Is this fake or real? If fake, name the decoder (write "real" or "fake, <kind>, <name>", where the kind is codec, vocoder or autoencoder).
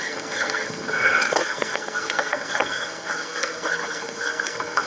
fake, codec, SNAC